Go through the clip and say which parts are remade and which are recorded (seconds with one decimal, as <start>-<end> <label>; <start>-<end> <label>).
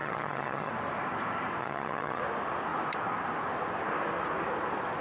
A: 0.0-0.7 remade; 0.7-1.6 recorded; 1.6-2.2 remade; 2.2-5.0 recorded